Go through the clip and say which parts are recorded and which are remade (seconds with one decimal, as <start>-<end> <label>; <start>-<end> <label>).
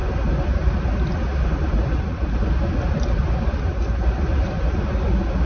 0.0-5.5 recorded